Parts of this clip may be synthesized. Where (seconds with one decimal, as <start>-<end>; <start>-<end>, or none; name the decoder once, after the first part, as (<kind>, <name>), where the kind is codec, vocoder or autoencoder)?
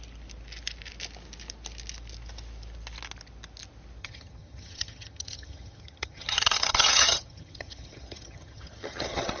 4.0-9.4 (vocoder, HiFi-GAN)